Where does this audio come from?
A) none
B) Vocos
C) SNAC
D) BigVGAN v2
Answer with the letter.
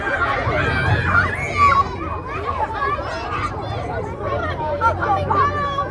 A